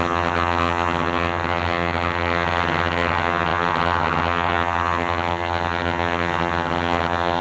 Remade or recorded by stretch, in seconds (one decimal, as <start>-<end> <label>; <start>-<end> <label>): 0.0-7.4 remade